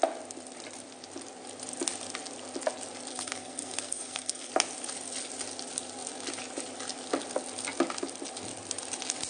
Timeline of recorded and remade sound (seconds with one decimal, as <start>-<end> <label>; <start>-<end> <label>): 0.0-3.1 recorded; 3.1-4.5 remade; 4.5-9.3 recorded